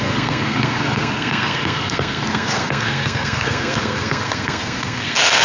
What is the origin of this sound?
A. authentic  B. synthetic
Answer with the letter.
B